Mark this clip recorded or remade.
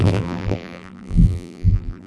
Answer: remade